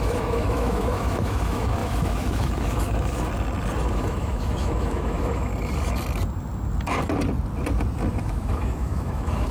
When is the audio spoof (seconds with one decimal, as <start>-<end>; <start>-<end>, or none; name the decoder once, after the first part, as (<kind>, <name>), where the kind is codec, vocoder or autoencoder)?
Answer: 0.0-3.3 (autoencoder, DAC-VAE); 3.9-5.5; 8.2-9.5